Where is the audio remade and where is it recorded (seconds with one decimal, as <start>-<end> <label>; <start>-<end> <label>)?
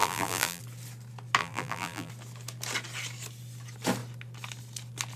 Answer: 0.0-0.6 remade; 0.6-1.4 recorded; 1.4-2.1 remade; 2.1-5.2 recorded